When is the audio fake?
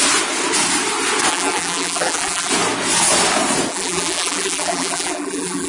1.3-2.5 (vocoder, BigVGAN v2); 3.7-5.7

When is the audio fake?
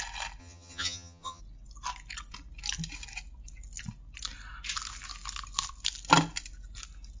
0.4-1.4 (vocoder, HiFi-GAN)